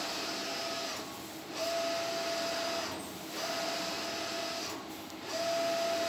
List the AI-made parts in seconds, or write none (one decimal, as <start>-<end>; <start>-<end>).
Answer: none